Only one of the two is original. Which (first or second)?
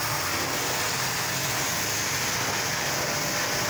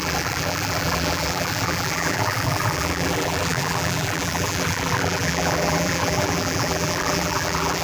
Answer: first